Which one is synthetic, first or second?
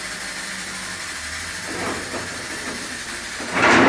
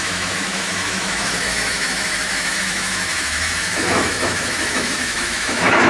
second